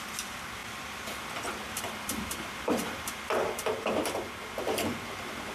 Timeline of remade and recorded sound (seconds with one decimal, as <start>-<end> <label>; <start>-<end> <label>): 0.0-0.6 recorded; 0.6-3.9 remade; 3.9-5.5 recorded

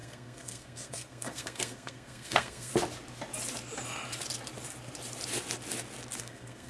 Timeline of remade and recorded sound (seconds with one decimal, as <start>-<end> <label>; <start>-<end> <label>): 0.0-2.7 remade; 2.7-6.2 recorded; 6.2-6.7 remade

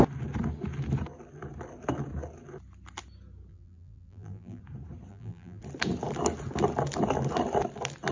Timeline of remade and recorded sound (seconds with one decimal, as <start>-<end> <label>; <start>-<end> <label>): 0.0-3.5 recorded; 3.5-4.6 remade; 4.6-5.1 recorded; 5.1-5.6 remade; 5.6-8.1 recorded